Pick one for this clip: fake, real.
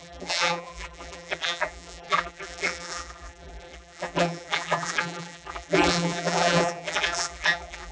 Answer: fake